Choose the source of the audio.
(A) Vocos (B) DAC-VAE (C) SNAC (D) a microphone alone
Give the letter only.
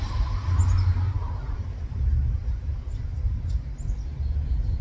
D